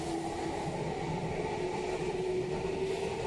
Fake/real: real